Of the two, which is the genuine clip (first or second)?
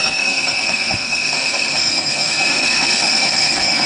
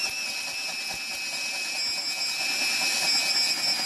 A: second